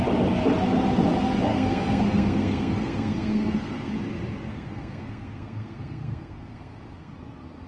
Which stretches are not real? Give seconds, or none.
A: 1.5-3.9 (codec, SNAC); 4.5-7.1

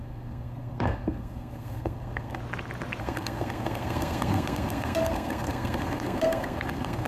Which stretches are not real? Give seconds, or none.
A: 0.0-2.4 (codec, SNAC); 3.0-7.1

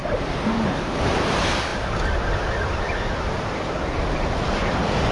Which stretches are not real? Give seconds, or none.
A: none

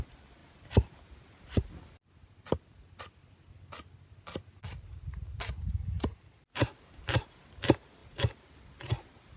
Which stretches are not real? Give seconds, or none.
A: none

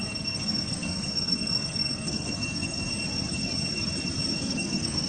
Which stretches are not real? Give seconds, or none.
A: 0.0-2.9 (codec, SNAC); 4.4-5.1

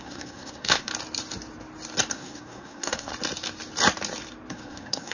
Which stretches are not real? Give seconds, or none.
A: 0.0-0.9 (codec, SNAC); 2.1-3.1; 4.5-5.1

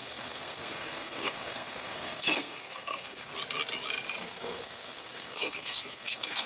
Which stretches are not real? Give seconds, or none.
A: 0.0-3.3 (codec, SNAC); 4.2-6.5

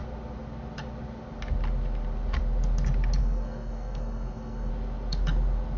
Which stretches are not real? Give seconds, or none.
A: 3.2-4.7 (codec, SNAC)